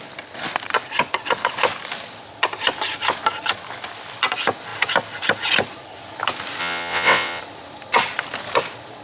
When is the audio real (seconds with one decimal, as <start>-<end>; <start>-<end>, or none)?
0.0-6.6; 7.4-9.0